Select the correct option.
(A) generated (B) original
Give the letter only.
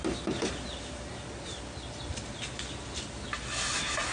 B